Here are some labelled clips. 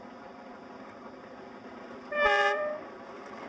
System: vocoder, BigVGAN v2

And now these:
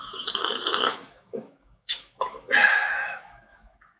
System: autoencoder, DAC-VAE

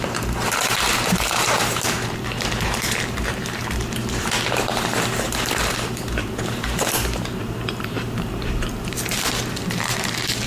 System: vocoder, BigVGAN v2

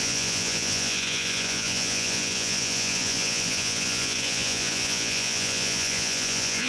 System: vocoder, Vocos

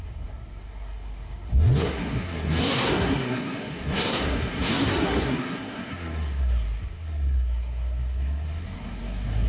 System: codec, SNAC